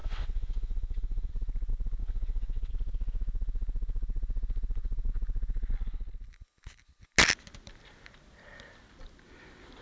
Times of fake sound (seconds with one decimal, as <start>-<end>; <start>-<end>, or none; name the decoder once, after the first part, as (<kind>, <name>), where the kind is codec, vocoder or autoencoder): 0.0-1.3 (vocoder, WaveNeXt); 2.0-2.7